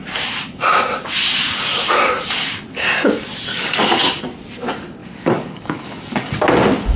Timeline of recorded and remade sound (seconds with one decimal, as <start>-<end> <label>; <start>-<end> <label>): 0.0-3.5 recorded; 3.5-4.2 remade; 4.2-5.0 recorded; 5.0-6.3 remade; 6.3-7.0 recorded